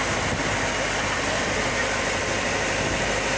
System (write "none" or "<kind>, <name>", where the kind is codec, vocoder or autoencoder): none